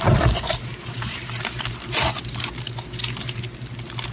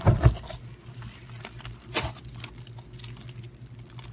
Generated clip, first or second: first